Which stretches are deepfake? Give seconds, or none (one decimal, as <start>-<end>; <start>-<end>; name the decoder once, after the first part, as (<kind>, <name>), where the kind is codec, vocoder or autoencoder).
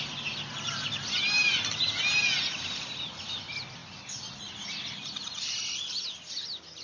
none